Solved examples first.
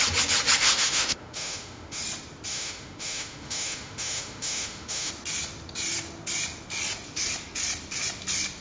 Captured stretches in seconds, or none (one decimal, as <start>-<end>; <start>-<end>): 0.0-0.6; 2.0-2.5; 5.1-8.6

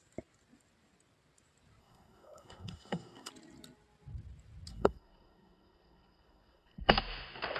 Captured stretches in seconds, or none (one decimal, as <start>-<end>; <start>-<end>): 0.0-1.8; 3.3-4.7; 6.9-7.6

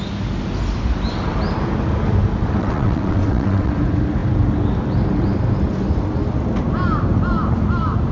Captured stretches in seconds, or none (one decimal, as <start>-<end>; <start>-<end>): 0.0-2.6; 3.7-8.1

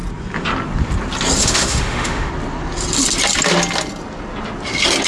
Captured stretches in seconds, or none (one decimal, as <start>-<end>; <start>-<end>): 0.0-1.4; 2.3-5.1

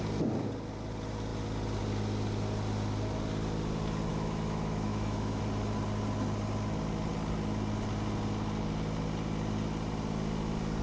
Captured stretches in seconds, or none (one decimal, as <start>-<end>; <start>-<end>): 0.0-4.1; 5.4-10.8